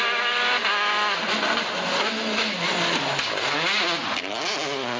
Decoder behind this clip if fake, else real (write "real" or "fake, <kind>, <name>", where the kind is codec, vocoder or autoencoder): real